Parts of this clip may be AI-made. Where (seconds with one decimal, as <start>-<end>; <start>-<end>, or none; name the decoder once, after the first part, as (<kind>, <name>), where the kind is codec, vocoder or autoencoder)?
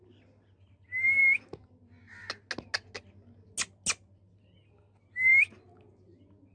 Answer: none